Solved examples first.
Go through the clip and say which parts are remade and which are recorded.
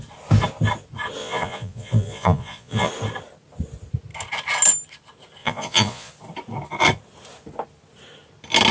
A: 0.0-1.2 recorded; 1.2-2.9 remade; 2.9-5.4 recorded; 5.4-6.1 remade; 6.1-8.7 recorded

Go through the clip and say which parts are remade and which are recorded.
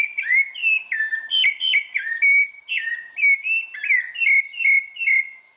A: 0.0-5.6 recorded